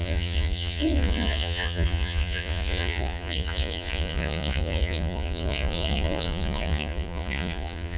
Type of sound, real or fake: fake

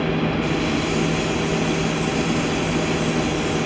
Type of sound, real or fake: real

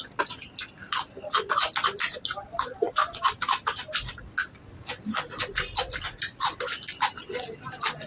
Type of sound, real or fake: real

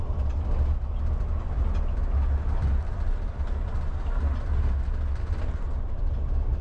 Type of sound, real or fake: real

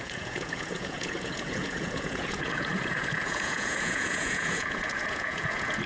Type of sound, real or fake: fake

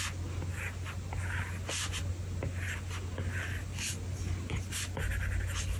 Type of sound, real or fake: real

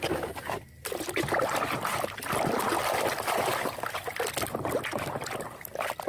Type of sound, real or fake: real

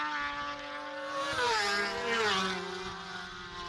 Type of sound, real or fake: real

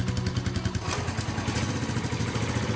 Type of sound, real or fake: real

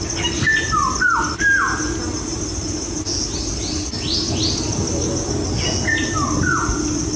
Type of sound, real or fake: real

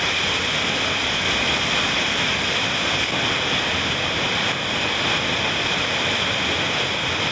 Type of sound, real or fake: real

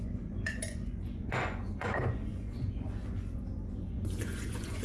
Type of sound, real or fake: fake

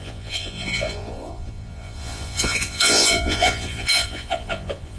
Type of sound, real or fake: fake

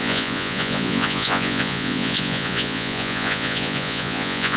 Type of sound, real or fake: fake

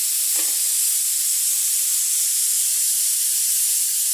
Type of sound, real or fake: real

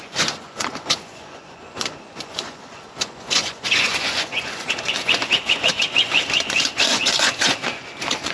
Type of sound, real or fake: fake